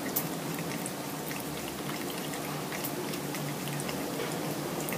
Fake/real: real